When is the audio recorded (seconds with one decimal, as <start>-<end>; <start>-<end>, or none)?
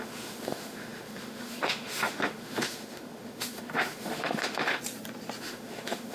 4.8-5.4